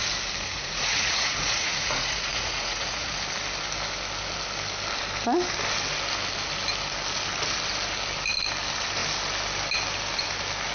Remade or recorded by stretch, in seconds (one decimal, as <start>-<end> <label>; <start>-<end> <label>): 0.0-0.4 recorded; 0.4-3.1 remade; 3.1-10.7 recorded